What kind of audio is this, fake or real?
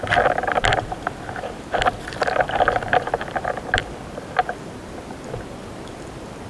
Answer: real